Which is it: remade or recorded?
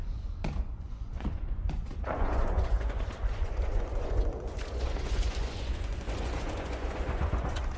remade